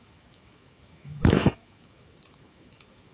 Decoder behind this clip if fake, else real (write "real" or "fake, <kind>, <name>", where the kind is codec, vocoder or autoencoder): fake, autoencoder, DAC-VAE